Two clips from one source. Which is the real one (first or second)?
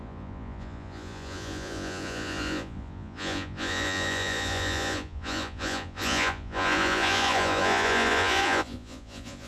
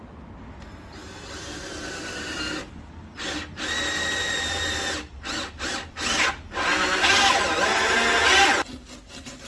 second